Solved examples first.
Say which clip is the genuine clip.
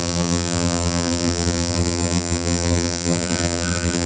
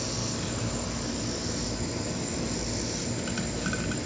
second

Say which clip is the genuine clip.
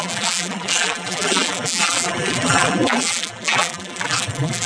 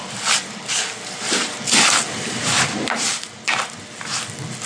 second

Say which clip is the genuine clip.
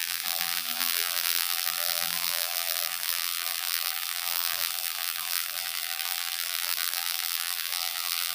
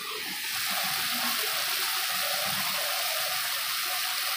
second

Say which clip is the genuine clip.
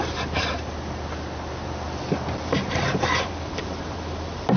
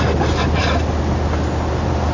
second